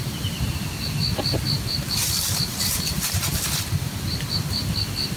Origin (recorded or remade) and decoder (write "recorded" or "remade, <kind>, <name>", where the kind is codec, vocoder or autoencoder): remade, vocoder, BigVGAN v2